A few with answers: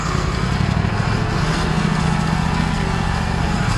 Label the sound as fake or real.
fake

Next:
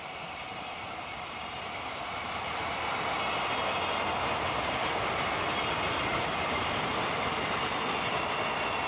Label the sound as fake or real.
real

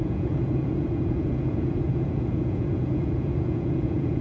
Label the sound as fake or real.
fake